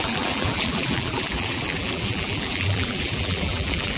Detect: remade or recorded remade